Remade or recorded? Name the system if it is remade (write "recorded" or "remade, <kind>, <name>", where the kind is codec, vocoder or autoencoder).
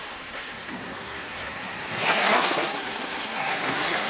remade, codec, SNAC